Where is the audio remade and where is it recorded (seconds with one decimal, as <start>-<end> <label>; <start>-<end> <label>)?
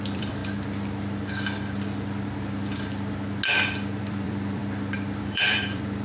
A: 0.0-0.4 remade; 0.4-4.0 recorded; 4.0-4.6 remade; 4.6-5.2 recorded; 5.2-6.0 remade